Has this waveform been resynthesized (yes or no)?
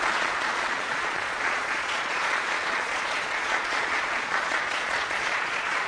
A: yes